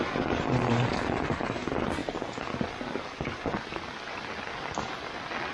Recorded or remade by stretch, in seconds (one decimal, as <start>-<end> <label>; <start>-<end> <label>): 0.0-5.5 recorded